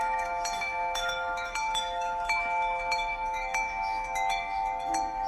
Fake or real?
fake